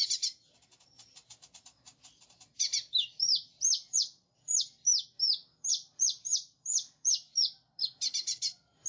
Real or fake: fake